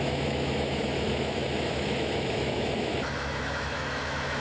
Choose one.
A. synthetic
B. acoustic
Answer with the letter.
A